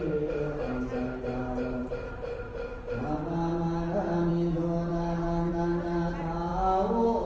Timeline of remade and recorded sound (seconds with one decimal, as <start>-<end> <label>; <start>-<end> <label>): 0.0-6.5 recorded; 6.5-7.3 remade